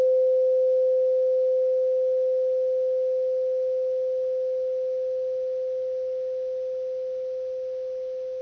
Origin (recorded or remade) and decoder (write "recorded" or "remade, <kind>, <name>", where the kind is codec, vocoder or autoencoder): recorded